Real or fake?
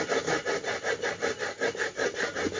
real